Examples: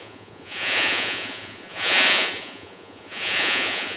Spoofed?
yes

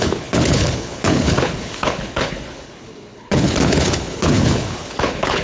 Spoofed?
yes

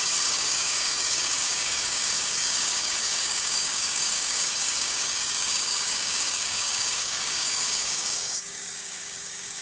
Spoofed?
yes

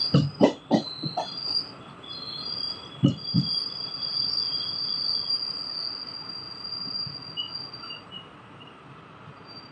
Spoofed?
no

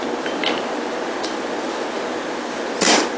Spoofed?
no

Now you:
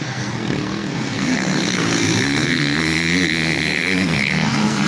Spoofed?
yes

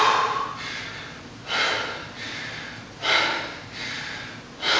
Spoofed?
no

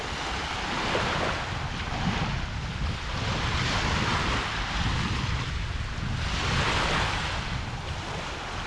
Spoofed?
no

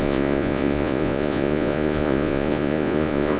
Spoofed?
yes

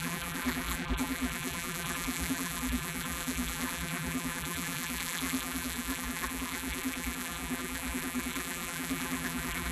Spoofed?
yes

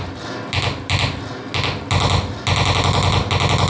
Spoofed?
no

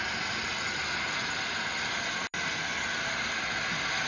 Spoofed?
no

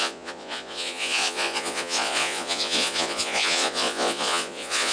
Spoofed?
yes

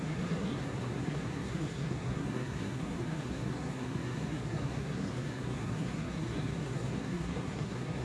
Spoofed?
yes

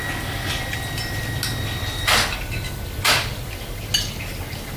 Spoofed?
no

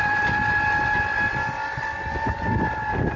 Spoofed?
no